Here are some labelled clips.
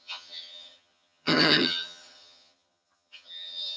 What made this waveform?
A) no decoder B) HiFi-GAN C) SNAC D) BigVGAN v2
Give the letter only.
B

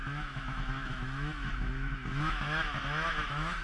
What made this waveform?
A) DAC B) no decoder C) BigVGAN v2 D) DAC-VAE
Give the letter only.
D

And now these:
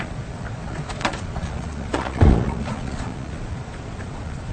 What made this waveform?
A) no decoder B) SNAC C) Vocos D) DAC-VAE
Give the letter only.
C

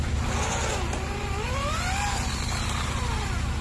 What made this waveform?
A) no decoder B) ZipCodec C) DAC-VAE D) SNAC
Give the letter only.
A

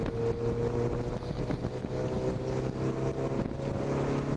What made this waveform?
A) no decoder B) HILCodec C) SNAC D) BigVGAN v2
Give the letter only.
A